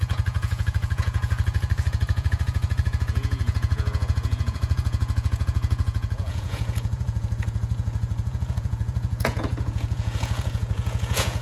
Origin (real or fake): fake